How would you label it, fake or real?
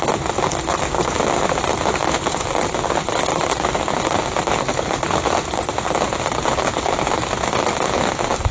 real